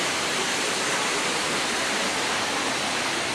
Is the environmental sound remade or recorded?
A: recorded